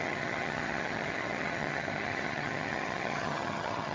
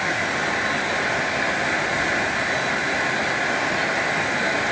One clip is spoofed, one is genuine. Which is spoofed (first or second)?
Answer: first